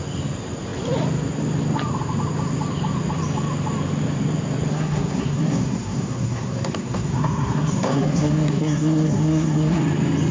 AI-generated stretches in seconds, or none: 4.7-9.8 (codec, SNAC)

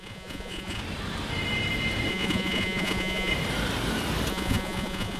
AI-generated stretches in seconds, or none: 0.0-0.8 (vocoder, Vocos); 2.1-3.3; 4.3-5.2

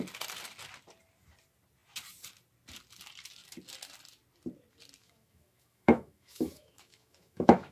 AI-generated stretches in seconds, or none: 5.0-7.7 (autoencoder, DAC-VAE)

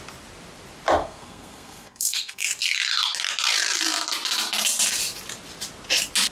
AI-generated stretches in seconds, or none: 1.0-2.5 (codec, SNAC)

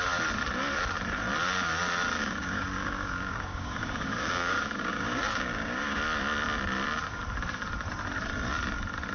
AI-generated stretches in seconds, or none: 2.2-6.0 (codec, DAC)